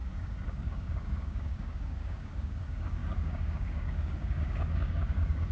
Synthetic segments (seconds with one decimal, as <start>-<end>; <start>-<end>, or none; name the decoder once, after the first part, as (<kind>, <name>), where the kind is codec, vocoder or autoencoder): 0.0-5.5 (codec, DAC)